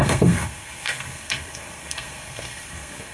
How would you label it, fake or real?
fake